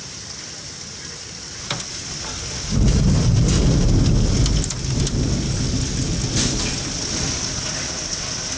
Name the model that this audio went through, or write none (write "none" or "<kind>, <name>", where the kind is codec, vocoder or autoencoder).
none